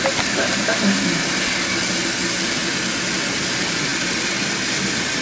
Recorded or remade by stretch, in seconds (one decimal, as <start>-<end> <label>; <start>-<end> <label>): 0.0-3.9 recorded; 3.9-5.2 remade